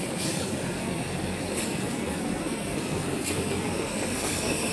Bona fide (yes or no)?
no